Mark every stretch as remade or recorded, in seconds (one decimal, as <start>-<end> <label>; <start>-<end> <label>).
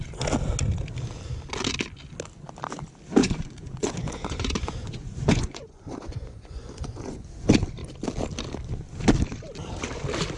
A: 0.0-3.2 recorded; 3.2-7.3 remade; 7.3-10.4 recorded